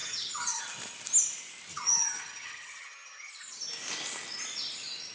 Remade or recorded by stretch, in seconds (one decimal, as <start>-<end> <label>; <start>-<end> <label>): 0.0-0.6 remade; 0.6-1.7 recorded; 1.7-3.3 remade; 3.3-5.1 recorded